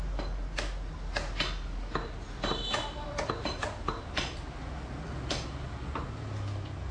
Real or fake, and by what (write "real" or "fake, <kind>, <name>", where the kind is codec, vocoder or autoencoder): real